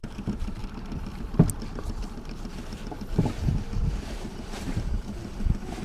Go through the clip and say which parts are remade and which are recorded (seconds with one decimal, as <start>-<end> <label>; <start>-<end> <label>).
0.0-0.6 remade; 0.6-4.1 recorded; 4.1-5.8 remade